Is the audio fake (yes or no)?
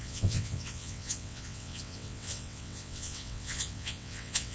yes